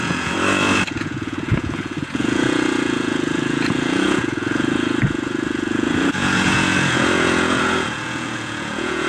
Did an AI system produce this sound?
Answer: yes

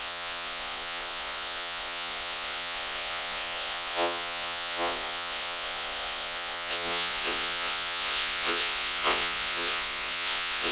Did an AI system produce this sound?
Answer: yes